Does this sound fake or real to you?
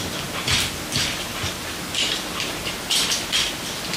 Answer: real